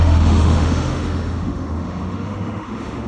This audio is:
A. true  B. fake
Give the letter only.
B